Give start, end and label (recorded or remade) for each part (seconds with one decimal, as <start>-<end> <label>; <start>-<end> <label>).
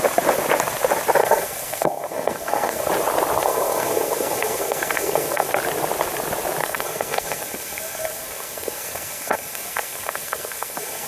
0.0-1.2 recorded; 1.2-2.9 remade; 2.9-3.4 recorded; 3.4-5.5 remade; 5.5-6.6 recorded; 6.6-11.1 remade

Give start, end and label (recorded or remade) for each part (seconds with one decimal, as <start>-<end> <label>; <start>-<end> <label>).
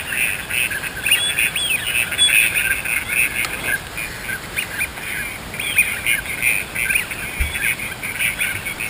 0.0-8.9 recorded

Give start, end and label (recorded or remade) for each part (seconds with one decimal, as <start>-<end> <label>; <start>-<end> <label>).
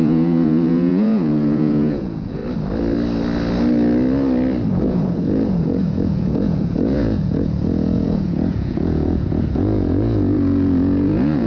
0.0-2.4 remade; 2.4-4.7 recorded; 4.7-11.5 remade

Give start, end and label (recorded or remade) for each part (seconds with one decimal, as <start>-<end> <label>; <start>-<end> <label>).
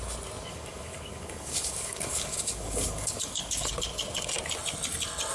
0.0-0.5 recorded; 0.5-3.7 remade; 3.7-5.3 recorded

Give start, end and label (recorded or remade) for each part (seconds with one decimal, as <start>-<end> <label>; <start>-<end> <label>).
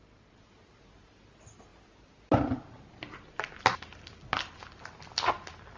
0.0-5.8 recorded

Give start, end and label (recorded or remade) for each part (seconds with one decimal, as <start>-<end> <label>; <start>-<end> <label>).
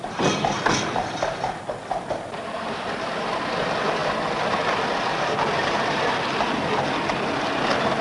0.0-8.0 recorded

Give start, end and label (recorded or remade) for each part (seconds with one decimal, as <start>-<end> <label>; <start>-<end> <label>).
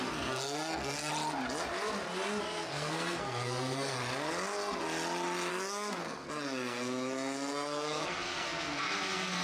0.0-1.1 remade; 1.1-2.4 recorded; 2.4-4.0 remade; 4.0-5.5 recorded; 5.5-9.4 remade